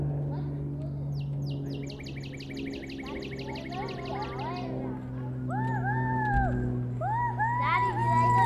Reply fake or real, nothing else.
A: real